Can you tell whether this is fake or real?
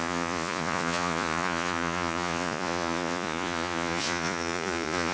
fake